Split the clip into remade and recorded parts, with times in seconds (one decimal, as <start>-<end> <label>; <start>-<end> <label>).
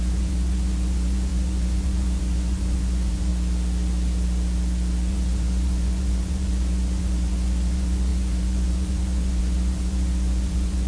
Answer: 0.0-3.3 remade; 3.3-5.1 recorded; 5.1-10.9 remade